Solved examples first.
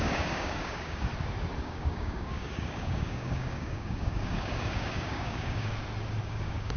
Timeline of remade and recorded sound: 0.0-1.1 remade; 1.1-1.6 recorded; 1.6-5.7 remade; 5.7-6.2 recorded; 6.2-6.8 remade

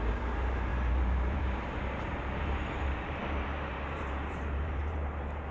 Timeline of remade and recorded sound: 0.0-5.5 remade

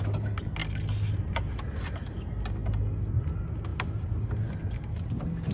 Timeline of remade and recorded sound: 0.0-5.5 recorded